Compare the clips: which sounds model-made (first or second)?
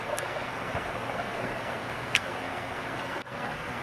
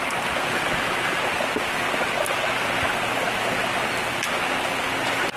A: first